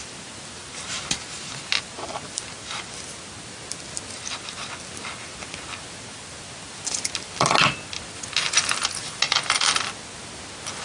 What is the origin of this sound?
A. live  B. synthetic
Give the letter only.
A